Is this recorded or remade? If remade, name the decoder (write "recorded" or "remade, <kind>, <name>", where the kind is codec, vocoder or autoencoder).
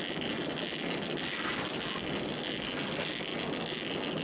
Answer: recorded